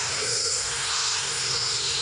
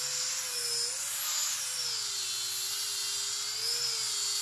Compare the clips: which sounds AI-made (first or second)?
first